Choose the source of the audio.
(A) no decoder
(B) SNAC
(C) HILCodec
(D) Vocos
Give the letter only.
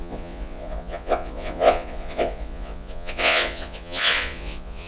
D